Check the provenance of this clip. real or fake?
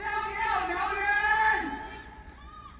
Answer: fake